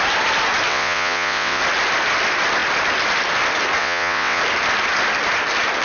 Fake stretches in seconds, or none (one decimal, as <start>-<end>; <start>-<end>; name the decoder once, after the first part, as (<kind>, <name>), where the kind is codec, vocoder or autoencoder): 0.7-1.6 (vocoder, WaveNeXt); 3.8-4.4